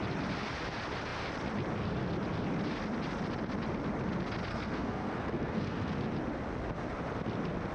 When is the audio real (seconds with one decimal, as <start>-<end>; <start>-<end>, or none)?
0.0-4.5; 5.9-7.7